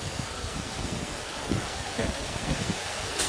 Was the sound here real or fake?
fake